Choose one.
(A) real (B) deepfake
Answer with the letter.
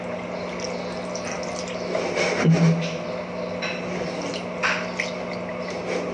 A